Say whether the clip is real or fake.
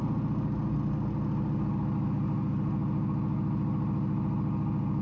real